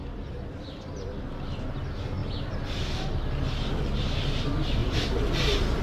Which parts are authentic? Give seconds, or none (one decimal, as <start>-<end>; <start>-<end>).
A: 0.9-2.2; 3.2-4.8; 5.3-5.8